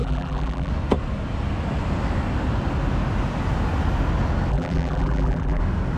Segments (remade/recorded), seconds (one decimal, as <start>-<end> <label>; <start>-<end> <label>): 0.0-0.7 remade; 0.7-4.5 recorded; 4.5-5.6 remade; 5.6-6.0 recorded